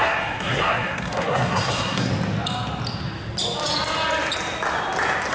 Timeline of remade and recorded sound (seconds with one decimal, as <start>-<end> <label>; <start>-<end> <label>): 0.0-2.1 remade; 2.1-5.3 recorded